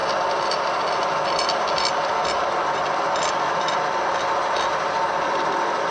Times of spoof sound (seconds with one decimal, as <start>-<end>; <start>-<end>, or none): none